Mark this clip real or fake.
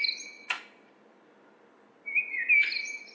real